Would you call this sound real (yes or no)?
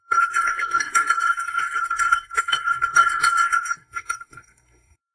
no